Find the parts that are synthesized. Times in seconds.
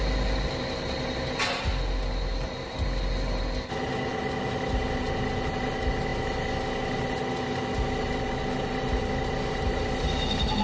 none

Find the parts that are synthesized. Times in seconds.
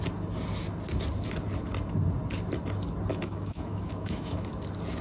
3.1-4.5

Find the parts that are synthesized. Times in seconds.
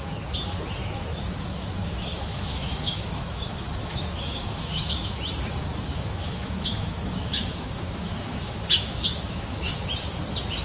0.8-5.2; 5.9-9.7